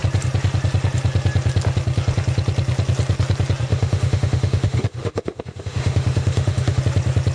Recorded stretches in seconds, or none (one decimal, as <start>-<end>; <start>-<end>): 0.0-3.7; 6.8-7.3